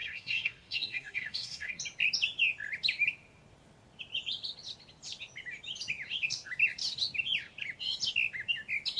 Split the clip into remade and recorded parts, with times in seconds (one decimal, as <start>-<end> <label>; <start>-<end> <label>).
0.0-1.8 remade; 1.8-9.0 recorded